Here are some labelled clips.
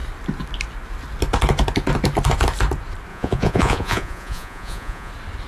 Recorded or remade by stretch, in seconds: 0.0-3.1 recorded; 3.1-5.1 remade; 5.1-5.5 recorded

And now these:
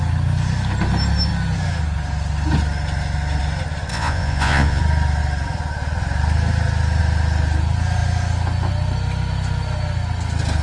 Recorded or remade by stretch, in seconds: 0.0-3.9 recorded; 3.9-4.8 remade; 4.8-10.6 recorded

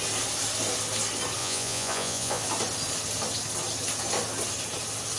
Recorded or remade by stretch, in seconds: 0.0-1.4 recorded; 1.4-2.4 remade; 2.4-5.2 recorded

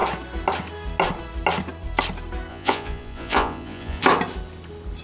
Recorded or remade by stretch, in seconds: 0.0-2.5 recorded; 2.5-4.0 remade; 4.0-5.0 recorded

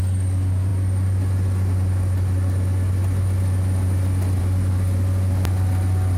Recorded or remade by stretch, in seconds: 0.0-6.2 recorded

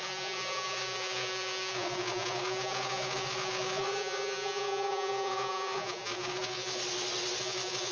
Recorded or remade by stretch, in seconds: 0.0-6.8 remade; 6.8-7.4 recorded; 7.4-7.9 remade